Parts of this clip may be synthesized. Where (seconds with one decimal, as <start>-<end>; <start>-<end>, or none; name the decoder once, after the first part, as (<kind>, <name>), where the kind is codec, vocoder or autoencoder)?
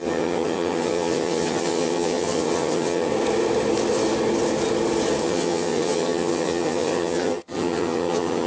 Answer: 0.0-3.1 (vocoder, HiFi-GAN); 5.2-8.5